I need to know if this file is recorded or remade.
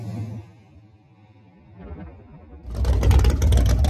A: recorded